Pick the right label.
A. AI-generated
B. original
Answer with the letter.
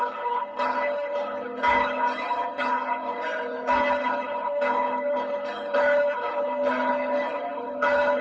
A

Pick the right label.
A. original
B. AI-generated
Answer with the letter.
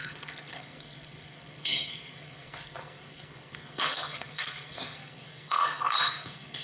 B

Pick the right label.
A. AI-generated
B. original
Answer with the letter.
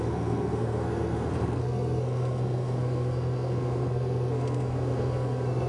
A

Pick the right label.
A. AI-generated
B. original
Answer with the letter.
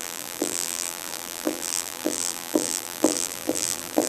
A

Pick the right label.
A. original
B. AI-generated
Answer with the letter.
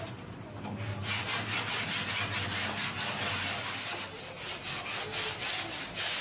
A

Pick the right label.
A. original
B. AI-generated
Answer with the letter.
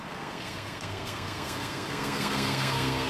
B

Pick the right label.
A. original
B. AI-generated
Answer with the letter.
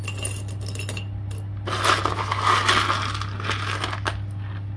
A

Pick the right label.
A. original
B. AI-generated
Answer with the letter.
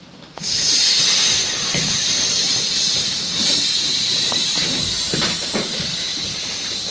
B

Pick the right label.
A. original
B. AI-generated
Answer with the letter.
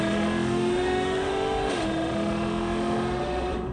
B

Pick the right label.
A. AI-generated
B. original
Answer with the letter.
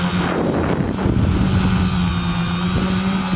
B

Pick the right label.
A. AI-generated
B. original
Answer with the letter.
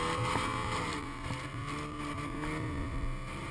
B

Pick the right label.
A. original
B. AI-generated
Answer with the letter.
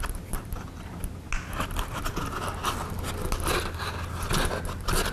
A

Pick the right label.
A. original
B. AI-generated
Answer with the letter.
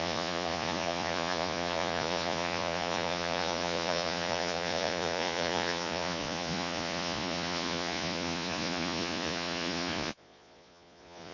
B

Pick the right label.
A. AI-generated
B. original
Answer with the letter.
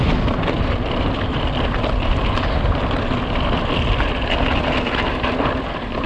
B